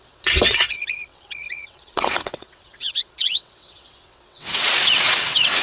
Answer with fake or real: fake